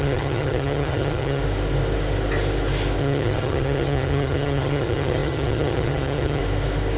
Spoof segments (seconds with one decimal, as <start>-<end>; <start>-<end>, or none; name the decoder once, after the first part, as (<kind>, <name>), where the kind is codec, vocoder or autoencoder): 0.0-1.4 (vocoder, HiFi-GAN); 3.0-6.4